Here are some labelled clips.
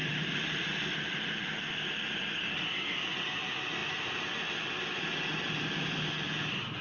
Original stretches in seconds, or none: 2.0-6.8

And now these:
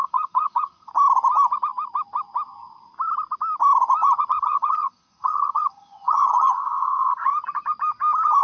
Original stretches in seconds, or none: 0.9-4.4; 7.3-8.4

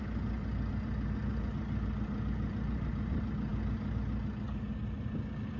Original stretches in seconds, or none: 0.0-5.6

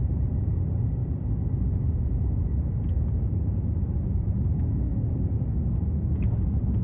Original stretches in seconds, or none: 4.9-6.2

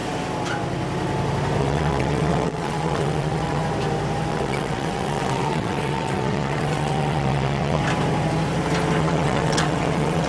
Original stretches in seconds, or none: 0.0-1.6; 3.6-4.3; 7.8-9.0

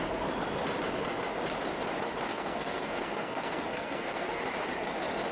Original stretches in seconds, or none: 0.0-2.3; 4.4-5.3